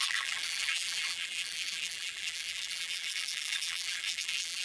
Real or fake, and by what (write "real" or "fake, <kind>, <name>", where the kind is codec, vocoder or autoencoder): fake, vocoder, BigVGAN v2